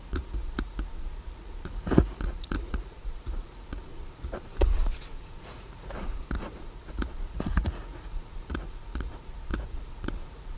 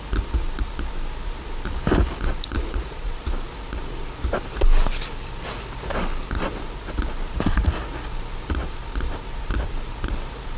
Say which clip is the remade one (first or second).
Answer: first